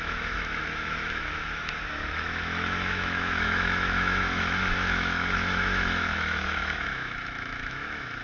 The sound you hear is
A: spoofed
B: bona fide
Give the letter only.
A